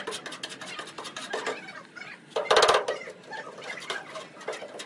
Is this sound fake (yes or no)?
no